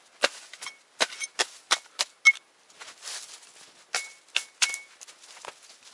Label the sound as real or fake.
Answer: real